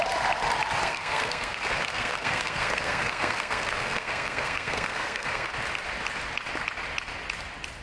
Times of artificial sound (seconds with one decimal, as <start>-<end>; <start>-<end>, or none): 0.8-5.5